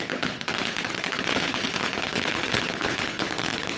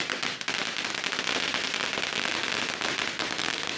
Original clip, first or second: second